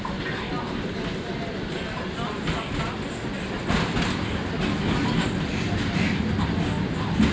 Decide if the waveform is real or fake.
real